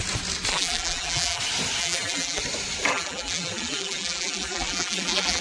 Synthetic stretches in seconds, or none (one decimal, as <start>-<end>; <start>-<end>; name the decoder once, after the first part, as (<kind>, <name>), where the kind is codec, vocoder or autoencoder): 0.5-1.4 (vocoder, BigVGAN v2); 1.8-2.4; 2.9-5.4